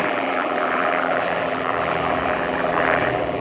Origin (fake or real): fake